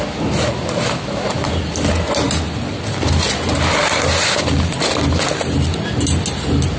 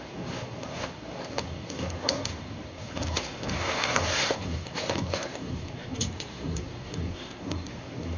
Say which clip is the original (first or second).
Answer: first